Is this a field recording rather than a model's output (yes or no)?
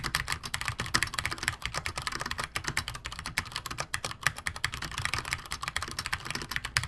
yes